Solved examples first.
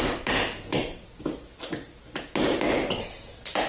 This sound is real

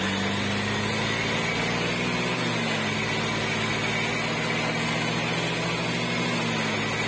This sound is real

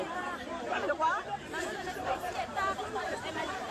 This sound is fake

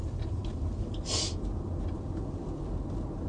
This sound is real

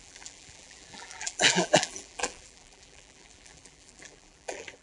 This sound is fake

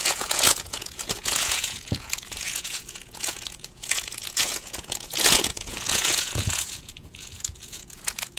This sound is fake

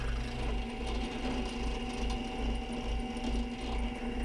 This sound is real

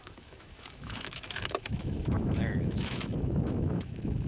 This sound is fake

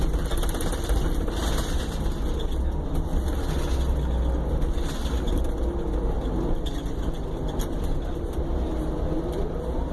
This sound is real